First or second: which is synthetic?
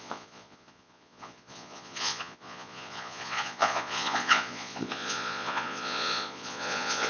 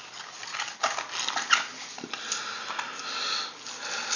first